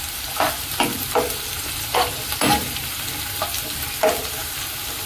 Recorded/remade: recorded